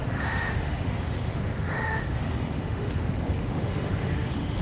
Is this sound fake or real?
fake